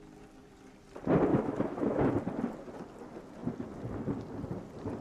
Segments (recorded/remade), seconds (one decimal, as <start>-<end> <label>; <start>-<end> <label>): 0.0-1.3 recorded; 1.3-2.1 remade; 2.1-5.0 recorded